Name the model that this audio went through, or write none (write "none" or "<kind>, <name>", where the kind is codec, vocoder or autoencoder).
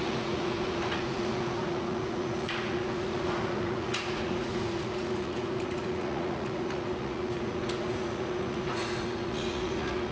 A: vocoder, Vocos